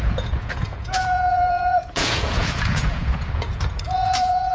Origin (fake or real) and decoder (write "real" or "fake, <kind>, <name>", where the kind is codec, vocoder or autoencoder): fake, vocoder, Vocos